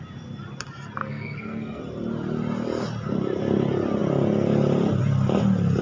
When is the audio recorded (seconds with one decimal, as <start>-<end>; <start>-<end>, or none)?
0.0-1.0; 1.8-5.8